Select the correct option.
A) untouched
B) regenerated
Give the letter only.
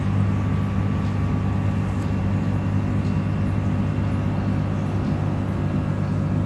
A